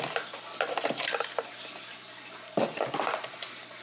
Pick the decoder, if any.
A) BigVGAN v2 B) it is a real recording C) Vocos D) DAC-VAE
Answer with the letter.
B